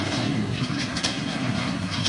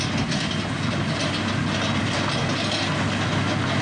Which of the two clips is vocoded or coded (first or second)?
first